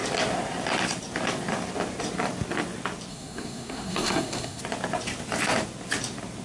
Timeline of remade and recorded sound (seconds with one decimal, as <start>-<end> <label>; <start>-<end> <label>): 0.0-3.1 recorded; 3.1-4.6 remade; 4.6-6.4 recorded